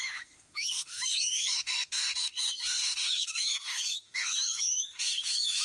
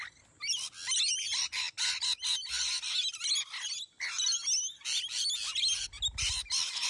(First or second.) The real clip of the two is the second